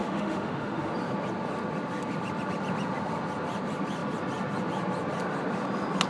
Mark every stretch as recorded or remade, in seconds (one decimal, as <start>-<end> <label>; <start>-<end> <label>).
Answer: 0.0-0.9 remade; 0.9-6.1 recorded